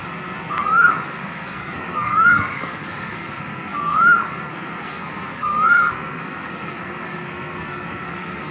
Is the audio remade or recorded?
remade